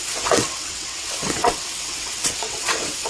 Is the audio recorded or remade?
remade